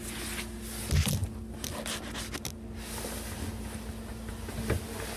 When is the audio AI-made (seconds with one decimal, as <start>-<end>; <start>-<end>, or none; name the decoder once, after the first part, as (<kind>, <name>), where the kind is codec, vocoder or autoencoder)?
none